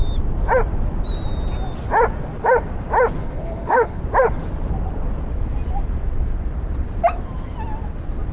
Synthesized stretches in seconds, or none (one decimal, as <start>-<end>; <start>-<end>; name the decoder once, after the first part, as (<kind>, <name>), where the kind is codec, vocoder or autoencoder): 3.2-4.0 (codec, HILCodec)